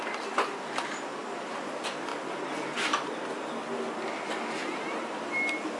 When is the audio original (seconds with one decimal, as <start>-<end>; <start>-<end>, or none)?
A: 0.0-5.8